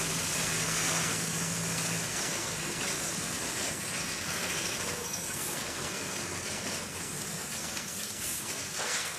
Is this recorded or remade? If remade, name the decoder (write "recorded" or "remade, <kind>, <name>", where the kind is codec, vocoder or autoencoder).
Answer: remade, codec, SNAC